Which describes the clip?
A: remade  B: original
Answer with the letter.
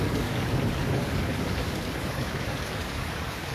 A